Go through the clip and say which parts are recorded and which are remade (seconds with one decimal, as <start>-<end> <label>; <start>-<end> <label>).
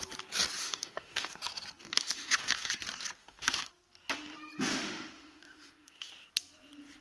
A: 0.0-0.6 recorded; 0.6-1.4 remade; 1.4-1.8 recorded; 1.8-2.7 remade; 2.7-3.2 recorded; 3.2-3.7 remade; 3.7-4.7 recorded; 4.7-6.1 remade; 6.1-7.0 recorded